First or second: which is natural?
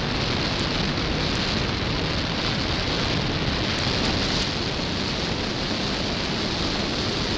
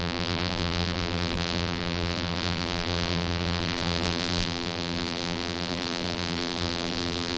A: first